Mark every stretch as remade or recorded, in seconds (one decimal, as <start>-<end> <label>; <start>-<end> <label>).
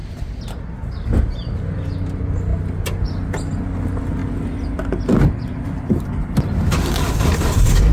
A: 0.0-7.9 recorded